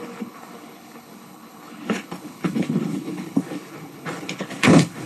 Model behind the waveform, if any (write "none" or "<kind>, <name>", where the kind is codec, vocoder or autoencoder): codec, HILCodec